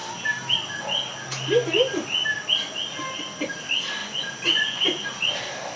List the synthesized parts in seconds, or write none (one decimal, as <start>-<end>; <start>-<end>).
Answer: 4.0-5.1